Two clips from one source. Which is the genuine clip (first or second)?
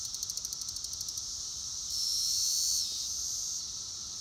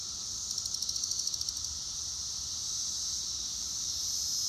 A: second